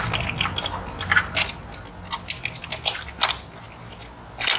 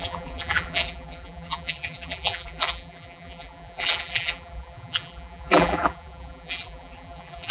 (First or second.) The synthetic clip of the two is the second